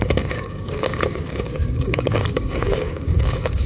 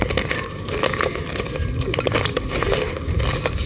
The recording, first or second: second